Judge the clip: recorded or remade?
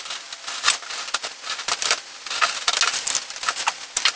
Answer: recorded